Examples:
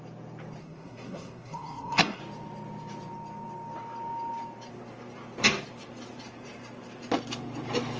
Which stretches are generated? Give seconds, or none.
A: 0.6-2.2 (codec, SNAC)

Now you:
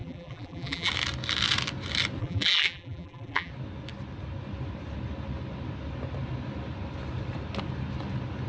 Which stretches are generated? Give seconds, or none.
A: 0.0-0.9 (vocoder, BigVGAN v2); 2.2-3.5